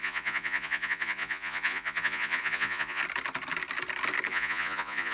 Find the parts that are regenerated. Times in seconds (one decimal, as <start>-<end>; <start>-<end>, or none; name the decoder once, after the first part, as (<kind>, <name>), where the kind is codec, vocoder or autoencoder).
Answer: 0.0-3.0 (vocoder, Vocos); 4.3-5.1